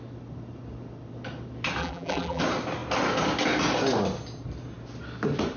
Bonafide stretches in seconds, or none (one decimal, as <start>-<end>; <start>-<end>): 0.0-1.8; 2.4-5.6

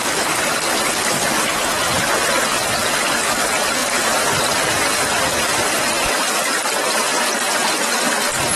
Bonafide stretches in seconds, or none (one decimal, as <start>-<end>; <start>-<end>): 0.0-3.8; 5.1-5.5; 7.5-8.6

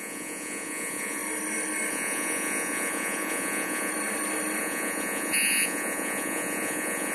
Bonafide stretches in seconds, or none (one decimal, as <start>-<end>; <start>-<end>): 1.2-1.9; 3.9-4.6

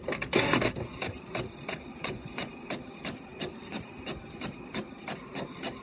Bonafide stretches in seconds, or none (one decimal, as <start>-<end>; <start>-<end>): 0.0-1.9; 2.5-5.8

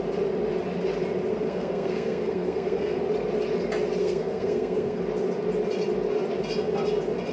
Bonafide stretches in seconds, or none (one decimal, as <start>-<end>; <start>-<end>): 0.0-1.3; 3.0-4.0; 5.0-7.3

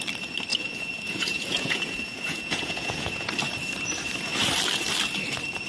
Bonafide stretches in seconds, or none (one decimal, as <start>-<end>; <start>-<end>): 0.0-0.5; 3.3-5.7

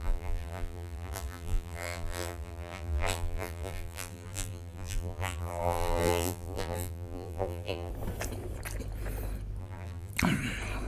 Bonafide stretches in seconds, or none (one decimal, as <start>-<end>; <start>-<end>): 7.9-9.6; 10.1-10.9

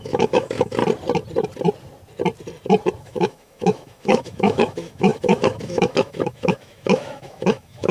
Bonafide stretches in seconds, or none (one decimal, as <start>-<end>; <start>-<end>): 0.8-3.0